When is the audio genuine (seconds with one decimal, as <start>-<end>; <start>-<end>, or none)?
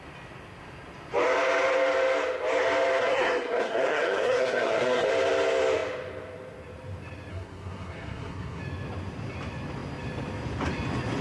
0.0-3.0; 5.1-7.3; 8.6-11.2